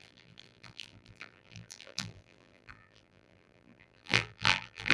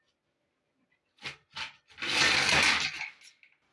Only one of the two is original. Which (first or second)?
second